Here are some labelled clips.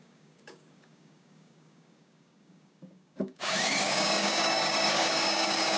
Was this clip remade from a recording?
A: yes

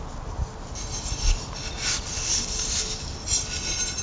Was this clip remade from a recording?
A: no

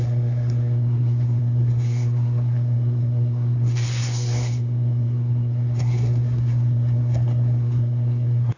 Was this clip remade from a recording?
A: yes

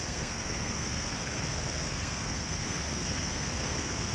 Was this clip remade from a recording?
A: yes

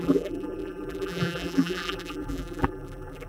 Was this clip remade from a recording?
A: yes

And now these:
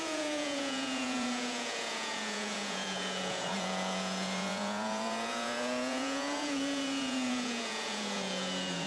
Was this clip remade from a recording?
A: yes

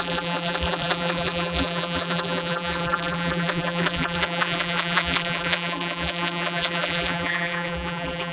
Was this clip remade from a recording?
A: yes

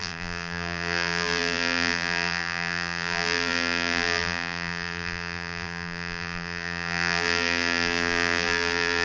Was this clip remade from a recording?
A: yes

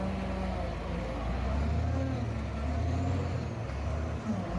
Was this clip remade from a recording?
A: no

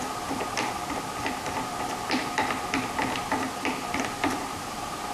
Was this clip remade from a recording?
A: no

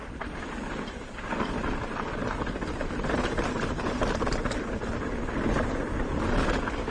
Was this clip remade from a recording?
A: no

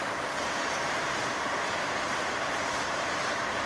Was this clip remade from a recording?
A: yes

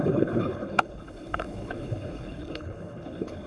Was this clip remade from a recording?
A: yes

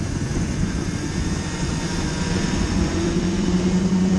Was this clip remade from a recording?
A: yes